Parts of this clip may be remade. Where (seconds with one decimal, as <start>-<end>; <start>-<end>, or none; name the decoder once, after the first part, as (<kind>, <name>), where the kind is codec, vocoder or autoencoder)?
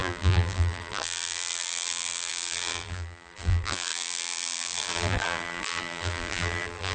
0.0-6.9 (vocoder, BigVGAN v2)